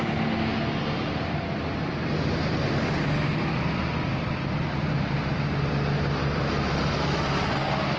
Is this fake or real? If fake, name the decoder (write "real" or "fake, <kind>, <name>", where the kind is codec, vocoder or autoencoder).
real